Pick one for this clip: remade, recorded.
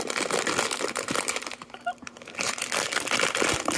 recorded